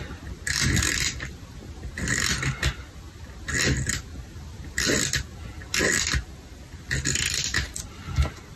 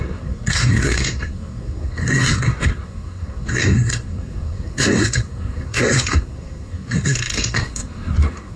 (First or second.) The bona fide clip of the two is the first